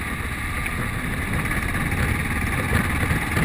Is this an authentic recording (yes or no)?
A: yes